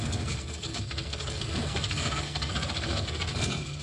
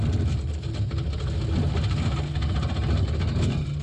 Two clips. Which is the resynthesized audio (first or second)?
first